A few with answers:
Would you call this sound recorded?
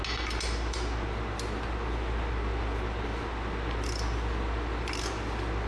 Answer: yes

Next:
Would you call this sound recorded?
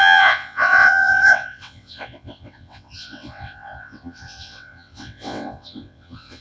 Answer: no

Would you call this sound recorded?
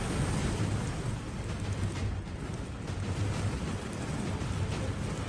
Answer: yes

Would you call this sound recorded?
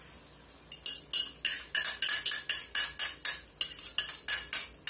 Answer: yes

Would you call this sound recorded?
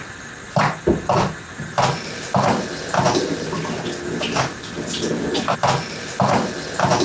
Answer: yes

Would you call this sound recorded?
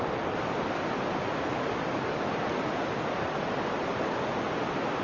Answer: yes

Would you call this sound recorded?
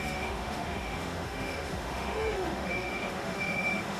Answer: no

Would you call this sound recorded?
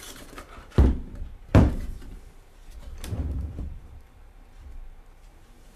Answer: no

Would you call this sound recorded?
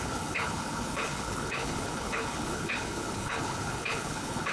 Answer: no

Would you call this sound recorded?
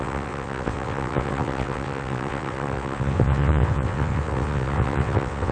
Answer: no